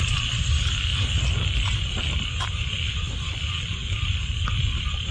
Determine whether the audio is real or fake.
real